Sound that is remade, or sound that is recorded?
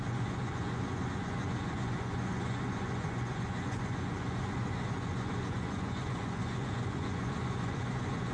remade